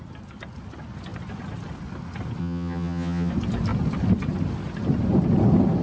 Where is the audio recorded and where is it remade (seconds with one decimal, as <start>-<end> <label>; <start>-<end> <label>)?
0.0-2.4 recorded; 2.4-3.3 remade; 3.3-5.8 recorded